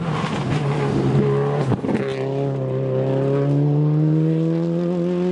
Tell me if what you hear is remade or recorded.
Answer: recorded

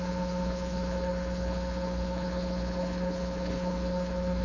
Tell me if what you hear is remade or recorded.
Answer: remade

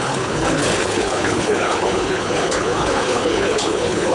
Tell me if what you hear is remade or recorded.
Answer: remade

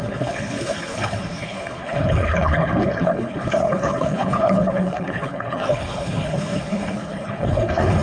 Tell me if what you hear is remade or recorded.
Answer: remade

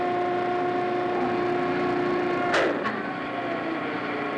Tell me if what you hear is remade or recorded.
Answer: recorded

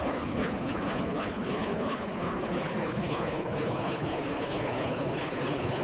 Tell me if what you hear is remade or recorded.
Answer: remade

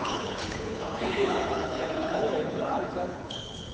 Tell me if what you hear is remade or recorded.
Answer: remade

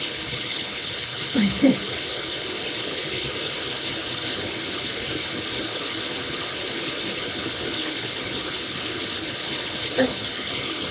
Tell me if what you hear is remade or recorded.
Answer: remade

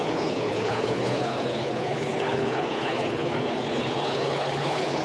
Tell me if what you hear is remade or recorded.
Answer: remade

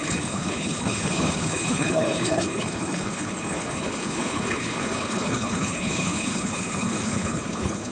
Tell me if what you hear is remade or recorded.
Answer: remade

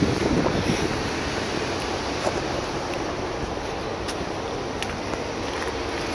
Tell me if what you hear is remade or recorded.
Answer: recorded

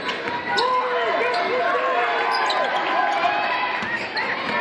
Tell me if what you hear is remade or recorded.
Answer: recorded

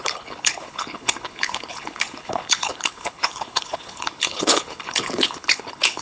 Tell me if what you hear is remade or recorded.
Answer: remade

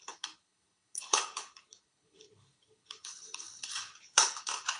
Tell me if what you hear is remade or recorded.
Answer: remade